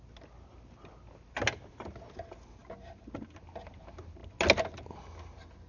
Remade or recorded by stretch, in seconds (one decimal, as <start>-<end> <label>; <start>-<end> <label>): 0.0-5.7 recorded